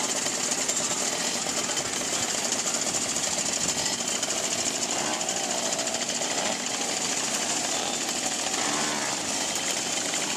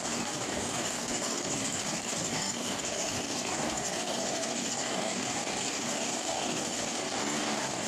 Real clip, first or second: first